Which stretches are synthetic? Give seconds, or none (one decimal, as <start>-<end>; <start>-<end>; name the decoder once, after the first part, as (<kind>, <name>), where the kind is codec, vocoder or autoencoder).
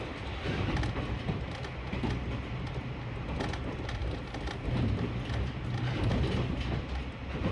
none